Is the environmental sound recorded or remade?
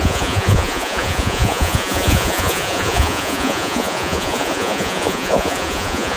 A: remade